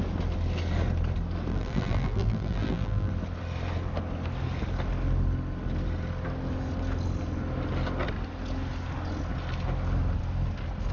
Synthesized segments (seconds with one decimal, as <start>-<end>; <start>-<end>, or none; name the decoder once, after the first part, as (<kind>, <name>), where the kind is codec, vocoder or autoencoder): 1.5-3.1 (vocoder, BigVGAN v2)